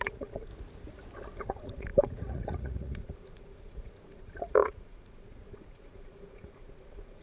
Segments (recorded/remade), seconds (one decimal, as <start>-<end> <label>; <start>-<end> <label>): 0.0-0.5 remade; 0.5-1.4 recorded; 1.4-7.2 remade